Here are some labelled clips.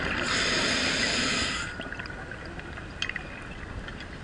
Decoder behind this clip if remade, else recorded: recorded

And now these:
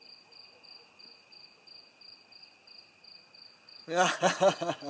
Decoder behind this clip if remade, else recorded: recorded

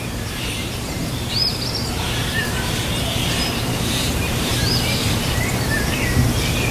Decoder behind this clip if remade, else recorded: remade, vocoder, BigVGAN v2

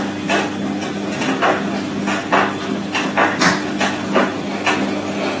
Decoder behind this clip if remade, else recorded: recorded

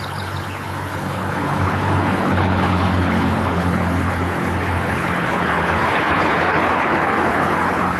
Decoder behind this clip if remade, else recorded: remade, codec, HILCodec